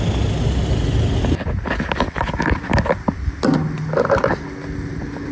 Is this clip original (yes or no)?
yes